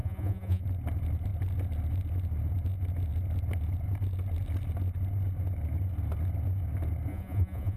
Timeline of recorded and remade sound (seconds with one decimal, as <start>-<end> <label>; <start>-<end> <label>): 0.0-0.6 remade; 0.6-7.1 recorded; 7.1-7.8 remade